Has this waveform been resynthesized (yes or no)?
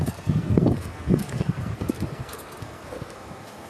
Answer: yes